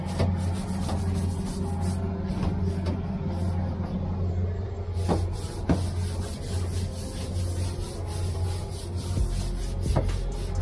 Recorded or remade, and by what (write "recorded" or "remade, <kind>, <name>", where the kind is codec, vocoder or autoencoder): recorded